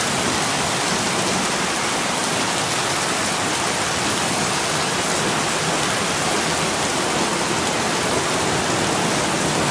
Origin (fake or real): real